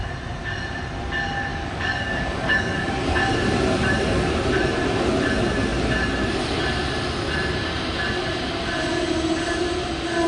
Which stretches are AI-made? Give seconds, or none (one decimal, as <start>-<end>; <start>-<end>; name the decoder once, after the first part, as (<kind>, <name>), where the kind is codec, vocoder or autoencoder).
1.5-3.3 (codec, DAC)